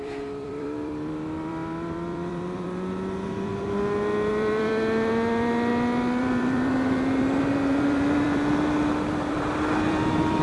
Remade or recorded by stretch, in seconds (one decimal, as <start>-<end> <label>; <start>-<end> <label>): 0.0-3.5 remade; 3.5-4.3 recorded; 4.3-5.7 remade; 5.7-6.2 recorded; 6.2-10.4 remade